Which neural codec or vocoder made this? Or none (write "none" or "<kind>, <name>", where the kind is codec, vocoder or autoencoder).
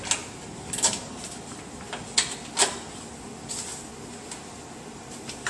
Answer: none